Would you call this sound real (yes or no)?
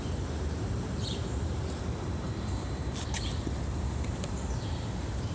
no